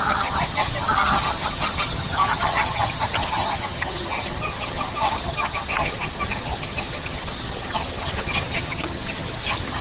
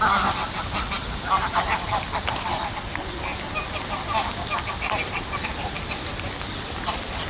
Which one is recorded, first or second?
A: second